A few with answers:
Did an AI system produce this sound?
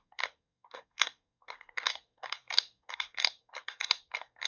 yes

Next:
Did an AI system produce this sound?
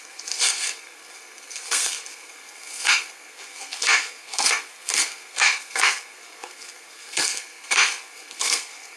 yes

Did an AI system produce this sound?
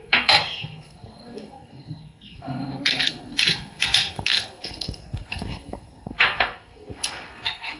yes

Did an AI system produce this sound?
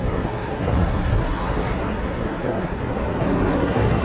yes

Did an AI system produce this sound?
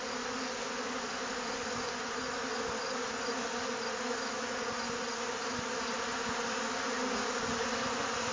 no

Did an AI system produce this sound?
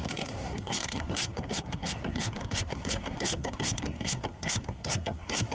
yes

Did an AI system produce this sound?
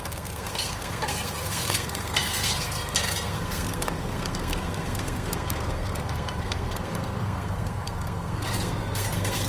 yes